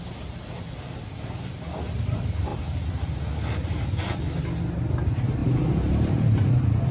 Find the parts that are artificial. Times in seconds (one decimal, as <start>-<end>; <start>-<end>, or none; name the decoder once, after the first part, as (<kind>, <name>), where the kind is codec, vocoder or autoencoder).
2.5-4.2 (vocoder, BigVGAN v2); 5.4-6.5